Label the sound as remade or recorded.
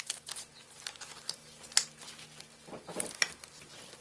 recorded